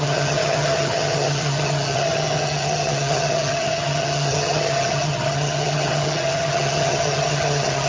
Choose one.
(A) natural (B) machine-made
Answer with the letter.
B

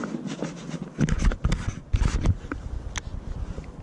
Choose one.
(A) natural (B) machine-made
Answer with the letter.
A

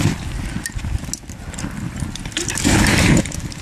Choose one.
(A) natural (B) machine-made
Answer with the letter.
A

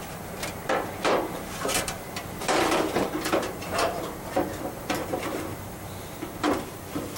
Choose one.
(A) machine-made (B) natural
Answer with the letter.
A